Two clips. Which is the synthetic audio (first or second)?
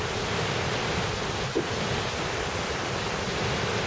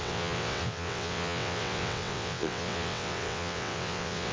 second